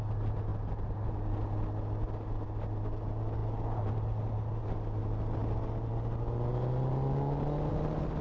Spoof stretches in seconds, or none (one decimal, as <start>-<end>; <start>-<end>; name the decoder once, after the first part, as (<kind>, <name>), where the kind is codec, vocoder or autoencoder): none

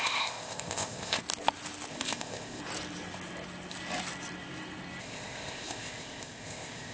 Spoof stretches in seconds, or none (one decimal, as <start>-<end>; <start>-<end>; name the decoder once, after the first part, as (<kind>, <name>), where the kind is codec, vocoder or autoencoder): 0.0-1.2 (codec, ZipCodec); 1.9-2.6; 5.0-6.9